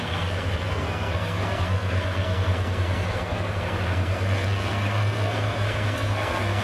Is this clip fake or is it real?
fake